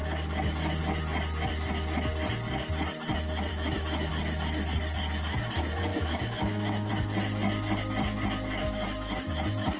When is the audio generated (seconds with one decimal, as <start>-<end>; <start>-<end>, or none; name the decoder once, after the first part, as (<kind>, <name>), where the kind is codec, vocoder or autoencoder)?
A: 3.5-4.1 (autoencoder, DAC-VAE); 5.9-6.9; 8.6-9.3

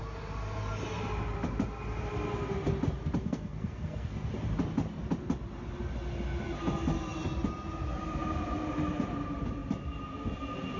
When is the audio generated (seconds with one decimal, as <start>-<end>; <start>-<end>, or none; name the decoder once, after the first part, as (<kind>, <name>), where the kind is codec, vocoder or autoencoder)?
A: 3.2-4.3 (codec, SNAC)

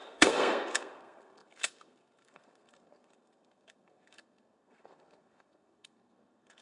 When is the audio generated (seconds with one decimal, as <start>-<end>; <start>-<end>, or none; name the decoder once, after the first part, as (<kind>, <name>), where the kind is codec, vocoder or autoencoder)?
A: 0.0-6.6 (codec, SNAC)

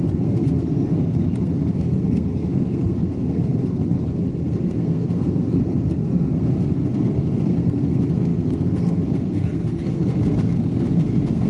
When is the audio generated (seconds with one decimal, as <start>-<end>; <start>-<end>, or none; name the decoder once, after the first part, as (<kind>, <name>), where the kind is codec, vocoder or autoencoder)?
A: 0.0-11.5 (codec, SNAC)